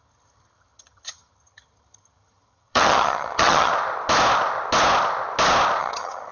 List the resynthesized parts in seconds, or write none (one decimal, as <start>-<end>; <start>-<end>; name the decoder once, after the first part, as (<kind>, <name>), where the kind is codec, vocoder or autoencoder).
0.0-3.7 (vocoder, HiFi-GAN); 5.8-6.3